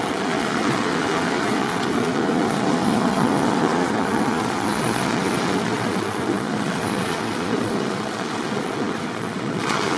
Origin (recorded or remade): remade